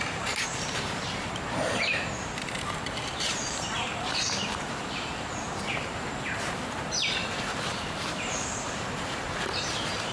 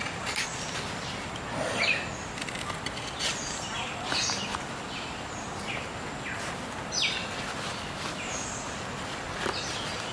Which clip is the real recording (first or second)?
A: second